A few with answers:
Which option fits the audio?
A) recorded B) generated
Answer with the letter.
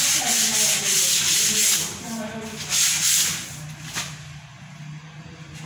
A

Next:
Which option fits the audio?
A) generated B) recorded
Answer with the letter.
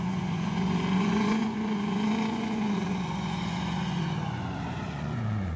A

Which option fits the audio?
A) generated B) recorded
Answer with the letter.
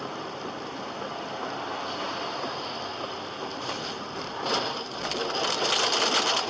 B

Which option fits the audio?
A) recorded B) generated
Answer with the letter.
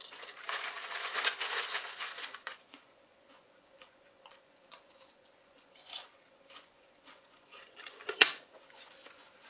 B